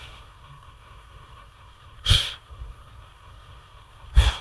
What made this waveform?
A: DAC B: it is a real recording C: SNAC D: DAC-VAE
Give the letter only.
C